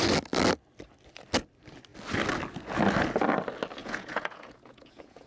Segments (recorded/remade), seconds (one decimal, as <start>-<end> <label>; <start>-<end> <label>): 0.0-3.8 recorded; 3.8-5.3 remade